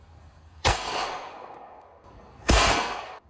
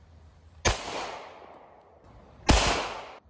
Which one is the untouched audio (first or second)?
second